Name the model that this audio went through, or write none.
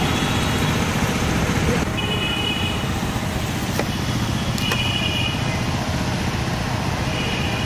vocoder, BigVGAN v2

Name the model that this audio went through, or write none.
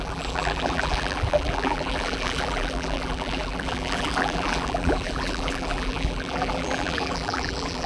vocoder, BigVGAN v2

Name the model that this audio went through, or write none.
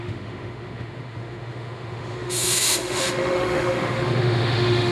autoencoder, DAC-VAE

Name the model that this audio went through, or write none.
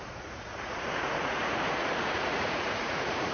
vocoder, Vocos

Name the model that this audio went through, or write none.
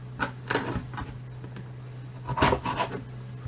none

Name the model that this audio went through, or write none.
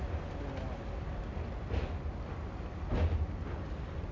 none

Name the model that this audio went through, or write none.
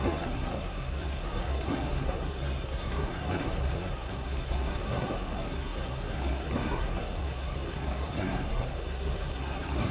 codec, SNAC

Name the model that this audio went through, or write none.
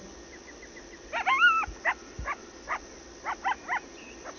vocoder, BigVGAN v2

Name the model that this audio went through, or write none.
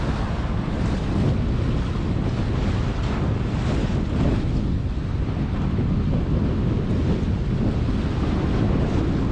none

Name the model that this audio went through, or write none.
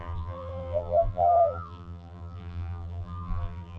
vocoder, BigVGAN v2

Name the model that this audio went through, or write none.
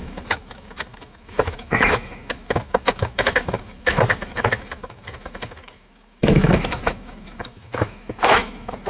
autoencoder, DAC-VAE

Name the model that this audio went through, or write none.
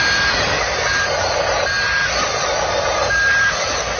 none